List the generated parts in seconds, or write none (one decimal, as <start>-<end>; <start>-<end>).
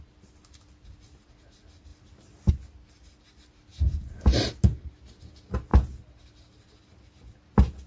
none